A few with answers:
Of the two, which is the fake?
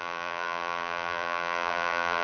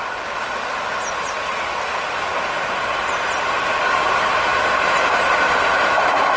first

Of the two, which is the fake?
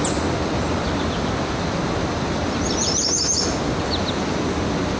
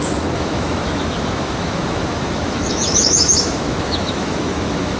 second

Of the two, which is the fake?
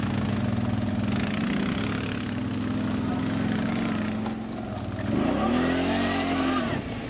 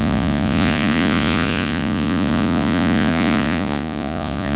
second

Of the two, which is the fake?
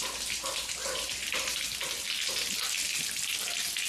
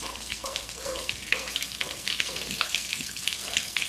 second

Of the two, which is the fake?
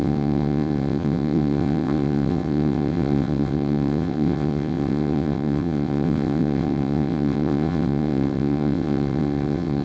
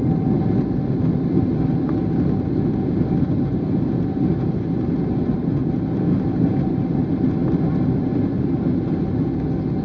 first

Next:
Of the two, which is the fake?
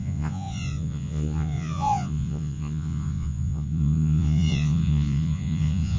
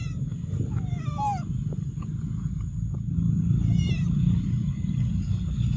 first